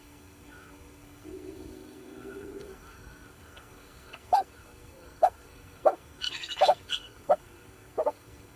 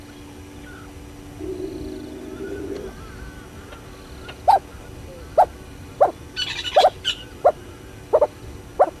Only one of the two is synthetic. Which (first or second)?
first